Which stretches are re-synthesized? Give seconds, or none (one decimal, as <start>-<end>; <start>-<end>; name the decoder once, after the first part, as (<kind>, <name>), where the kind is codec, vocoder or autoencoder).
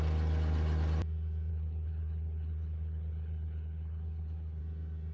1.5-4.6 (codec, HILCodec)